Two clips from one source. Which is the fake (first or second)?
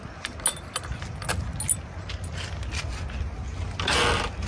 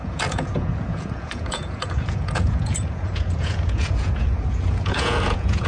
second